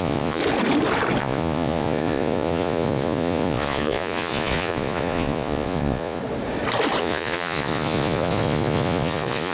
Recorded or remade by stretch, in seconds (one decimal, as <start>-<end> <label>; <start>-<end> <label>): 0.0-0.4 remade; 0.4-1.2 recorded; 1.2-6.2 remade; 6.2-7.0 recorded; 7.0-9.5 remade